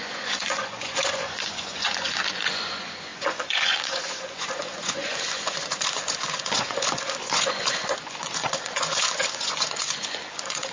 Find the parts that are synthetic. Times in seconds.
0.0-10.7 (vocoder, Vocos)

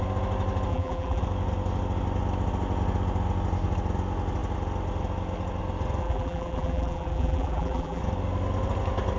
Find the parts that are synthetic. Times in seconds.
0.7-1.2 (vocoder, BigVGAN v2); 6.0-8.0

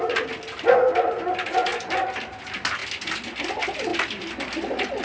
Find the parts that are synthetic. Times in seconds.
none